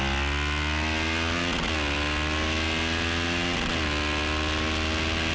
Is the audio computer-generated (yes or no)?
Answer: no